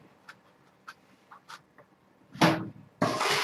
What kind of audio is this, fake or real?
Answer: real